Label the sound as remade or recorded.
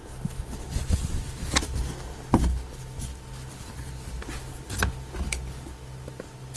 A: recorded